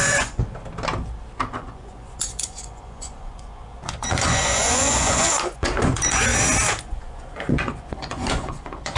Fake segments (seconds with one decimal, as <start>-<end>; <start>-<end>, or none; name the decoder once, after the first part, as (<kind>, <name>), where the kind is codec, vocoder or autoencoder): 0.0-0.4 (vocoder, Vocos); 1.5-6.3; 6.8-9.0

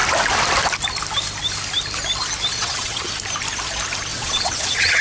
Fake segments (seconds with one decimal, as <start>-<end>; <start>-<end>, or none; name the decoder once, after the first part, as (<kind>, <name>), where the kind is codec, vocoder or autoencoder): 2.5-3.1 (vocoder, WaveNeXt); 4.1-5.0

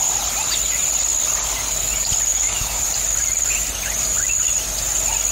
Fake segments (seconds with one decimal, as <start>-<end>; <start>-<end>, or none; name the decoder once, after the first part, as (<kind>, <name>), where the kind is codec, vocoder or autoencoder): 2.3-2.8 (autoencoder, DAC-VAE)

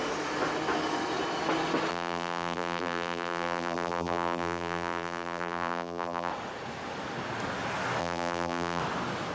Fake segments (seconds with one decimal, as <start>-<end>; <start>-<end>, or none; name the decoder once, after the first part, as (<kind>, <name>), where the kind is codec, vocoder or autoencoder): 1.9-6.3 (vocoder, BigVGAN v2); 8.0-8.8